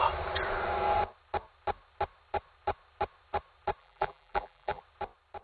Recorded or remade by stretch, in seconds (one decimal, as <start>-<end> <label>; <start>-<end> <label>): 0.0-3.8 recorded; 3.8-4.8 remade; 4.8-5.4 recorded